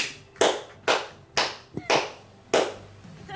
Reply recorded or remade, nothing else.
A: recorded